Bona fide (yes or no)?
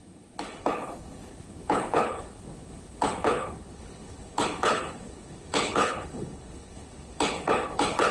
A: no